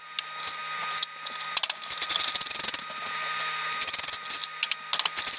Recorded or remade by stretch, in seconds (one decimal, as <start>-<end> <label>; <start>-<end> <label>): 0.0-5.4 recorded